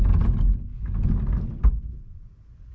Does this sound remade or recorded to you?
recorded